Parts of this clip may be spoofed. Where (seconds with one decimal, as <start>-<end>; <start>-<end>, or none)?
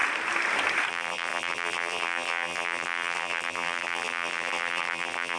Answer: 0.9-5.4